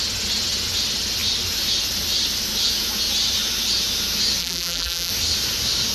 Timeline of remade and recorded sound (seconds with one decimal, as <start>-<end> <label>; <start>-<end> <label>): 0.0-4.4 recorded; 4.4-5.1 remade; 5.1-5.9 recorded